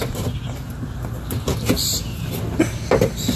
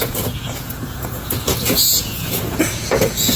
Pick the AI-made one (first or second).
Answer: second